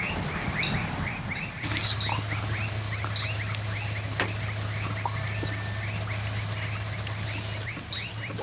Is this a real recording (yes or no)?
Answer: yes